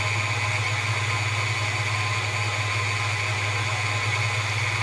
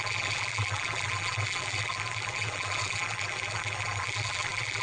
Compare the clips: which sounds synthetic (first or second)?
second